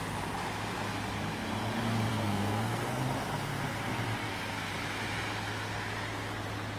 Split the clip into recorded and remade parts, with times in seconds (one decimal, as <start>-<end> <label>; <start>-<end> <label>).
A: 0.0-2.1 recorded; 2.1-3.0 remade; 3.0-4.2 recorded; 4.2-4.7 remade; 4.7-6.8 recorded